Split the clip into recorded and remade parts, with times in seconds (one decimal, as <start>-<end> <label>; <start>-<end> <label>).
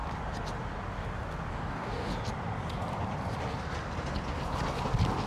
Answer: 0.0-1.5 recorded; 1.5-2.1 remade; 2.1-5.3 recorded